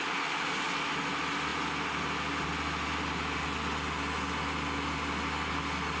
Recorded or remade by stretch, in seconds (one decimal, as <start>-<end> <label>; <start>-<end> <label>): 0.0-6.0 recorded